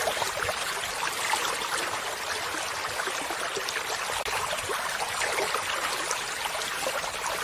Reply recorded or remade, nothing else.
recorded